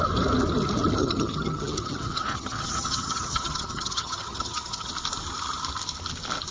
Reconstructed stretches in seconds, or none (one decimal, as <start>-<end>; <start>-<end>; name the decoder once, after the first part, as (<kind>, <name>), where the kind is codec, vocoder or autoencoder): 1.0-4.9 (vocoder, HiFi-GAN)